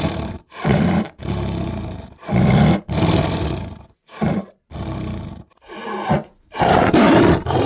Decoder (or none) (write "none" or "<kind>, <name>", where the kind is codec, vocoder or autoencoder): vocoder, BigVGAN v2